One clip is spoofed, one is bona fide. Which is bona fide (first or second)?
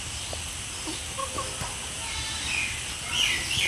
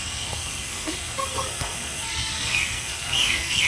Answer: first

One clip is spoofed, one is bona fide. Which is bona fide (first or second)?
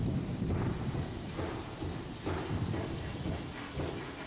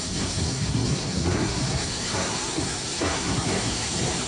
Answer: first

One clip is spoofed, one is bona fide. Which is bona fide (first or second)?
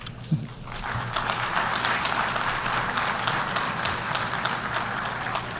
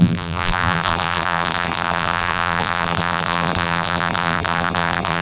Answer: first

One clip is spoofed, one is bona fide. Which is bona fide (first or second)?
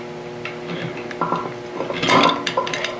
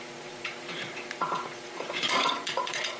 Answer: first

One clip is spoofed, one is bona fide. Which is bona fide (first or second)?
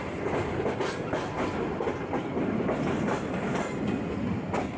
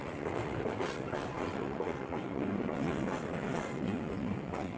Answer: first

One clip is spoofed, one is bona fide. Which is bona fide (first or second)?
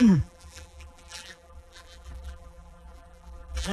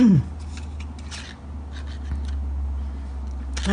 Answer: second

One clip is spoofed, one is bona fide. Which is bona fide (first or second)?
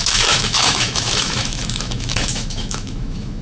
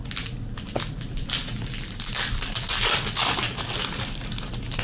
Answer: second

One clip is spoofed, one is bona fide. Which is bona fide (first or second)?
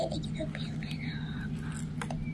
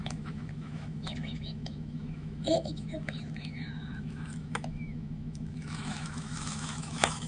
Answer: first